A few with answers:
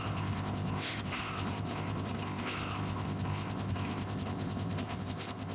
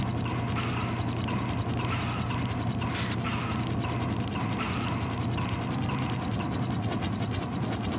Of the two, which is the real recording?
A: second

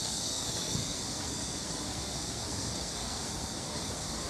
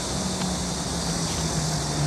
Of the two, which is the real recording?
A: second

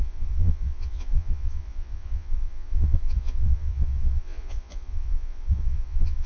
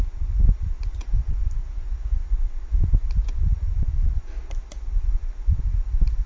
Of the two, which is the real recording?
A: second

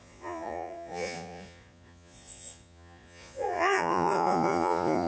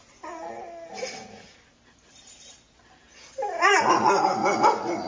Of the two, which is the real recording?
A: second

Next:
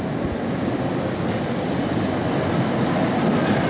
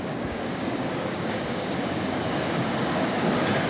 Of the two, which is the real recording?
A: first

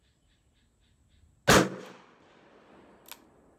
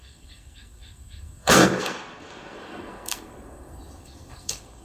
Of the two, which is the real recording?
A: first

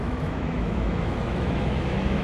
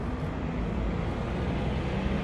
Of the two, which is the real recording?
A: second